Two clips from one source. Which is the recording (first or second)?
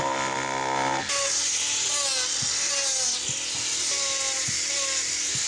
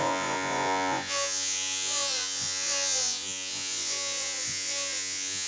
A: first